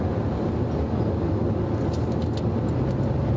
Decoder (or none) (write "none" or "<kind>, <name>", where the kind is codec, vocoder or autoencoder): none